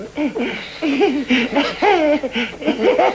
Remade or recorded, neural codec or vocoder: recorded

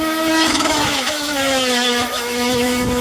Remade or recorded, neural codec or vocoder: remade, autoencoder, DAC-VAE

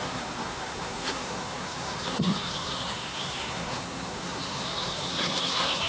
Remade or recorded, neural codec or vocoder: remade, codec, SNAC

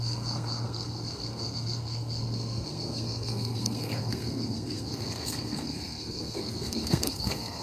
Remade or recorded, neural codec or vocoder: remade, codec, SNAC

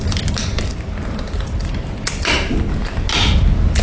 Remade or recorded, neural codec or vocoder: recorded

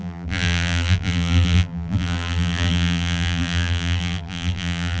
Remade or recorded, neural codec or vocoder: remade, vocoder, BigVGAN v2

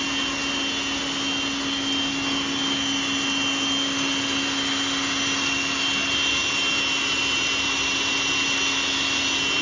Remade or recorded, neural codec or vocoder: recorded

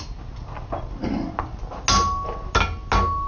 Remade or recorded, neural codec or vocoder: recorded